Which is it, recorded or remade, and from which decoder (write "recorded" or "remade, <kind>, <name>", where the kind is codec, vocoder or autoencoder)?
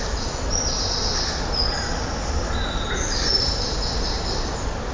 recorded